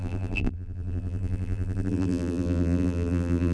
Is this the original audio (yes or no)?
no